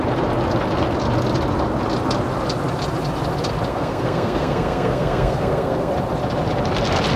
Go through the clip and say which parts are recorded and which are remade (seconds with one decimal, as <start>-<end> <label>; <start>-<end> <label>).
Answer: 0.0-3.7 recorded; 3.7-5.9 remade; 5.9-7.2 recorded